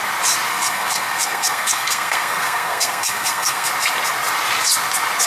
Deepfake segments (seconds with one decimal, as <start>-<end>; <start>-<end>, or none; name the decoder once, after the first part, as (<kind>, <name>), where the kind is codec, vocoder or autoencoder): 0.5-3.7 (codec, SNAC)